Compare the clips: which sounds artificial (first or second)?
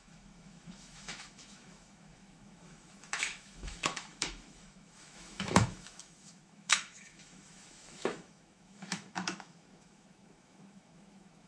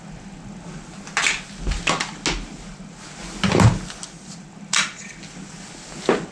first